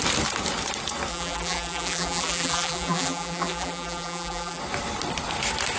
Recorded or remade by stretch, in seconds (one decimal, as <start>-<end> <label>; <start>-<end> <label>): 0.0-1.1 recorded; 1.1-4.6 remade; 4.6-5.8 recorded